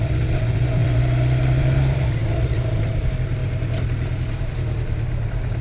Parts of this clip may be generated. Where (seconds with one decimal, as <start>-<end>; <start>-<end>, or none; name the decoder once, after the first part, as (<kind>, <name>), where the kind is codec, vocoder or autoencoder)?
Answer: 0.0-3.4 (vocoder, BigVGAN v2); 4.4-5.6